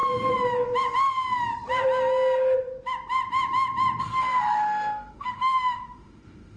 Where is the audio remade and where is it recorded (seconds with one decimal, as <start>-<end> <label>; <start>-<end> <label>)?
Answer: 0.0-4.0 recorded; 4.0-6.6 remade

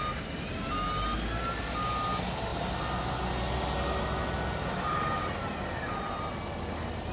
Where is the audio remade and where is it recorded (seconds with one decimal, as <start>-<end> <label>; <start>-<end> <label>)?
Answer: 0.0-7.1 recorded

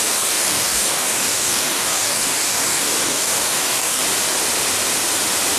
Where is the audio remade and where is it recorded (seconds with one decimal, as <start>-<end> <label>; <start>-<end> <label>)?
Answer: 0.0-4.0 remade; 4.0-5.6 recorded

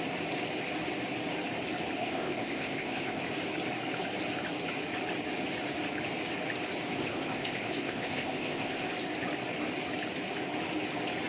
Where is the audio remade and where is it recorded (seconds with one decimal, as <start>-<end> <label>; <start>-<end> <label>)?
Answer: 0.0-2.0 recorded; 2.0-3.2 remade; 3.2-7.0 recorded; 7.0-8.9 remade; 8.9-11.3 recorded

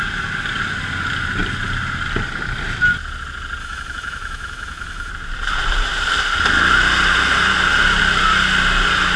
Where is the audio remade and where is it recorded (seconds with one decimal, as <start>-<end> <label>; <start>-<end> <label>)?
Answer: 0.0-3.6 recorded; 3.6-5.1 remade; 5.1-9.2 recorded

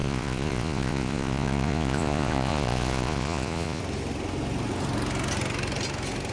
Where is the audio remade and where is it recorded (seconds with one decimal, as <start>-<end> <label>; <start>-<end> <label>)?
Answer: 0.0-3.8 remade; 3.8-6.3 recorded

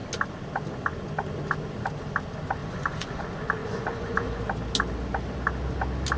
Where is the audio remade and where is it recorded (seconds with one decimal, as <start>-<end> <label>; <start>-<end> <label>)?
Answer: 0.0-2.6 recorded; 2.6-3.2 remade; 3.2-3.6 recorded; 3.6-4.4 remade; 4.4-6.2 recorded

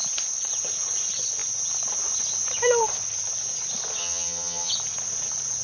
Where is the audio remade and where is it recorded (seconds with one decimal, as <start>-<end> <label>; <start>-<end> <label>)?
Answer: 0.0-4.0 recorded; 4.0-4.7 remade; 4.7-5.6 recorded